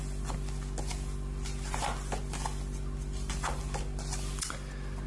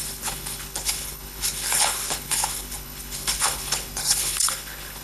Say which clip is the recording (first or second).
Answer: first